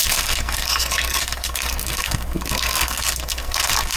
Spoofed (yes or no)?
yes